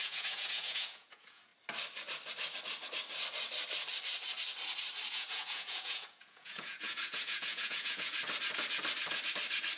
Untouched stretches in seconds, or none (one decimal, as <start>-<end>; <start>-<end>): 1.5-5.1; 8.1-9.8

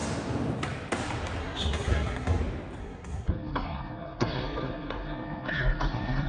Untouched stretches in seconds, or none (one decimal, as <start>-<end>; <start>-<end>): 0.0-1.4; 2.4-2.8

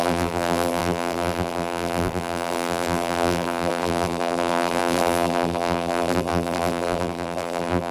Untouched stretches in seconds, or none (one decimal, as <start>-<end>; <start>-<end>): none